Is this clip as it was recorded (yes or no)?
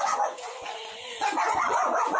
no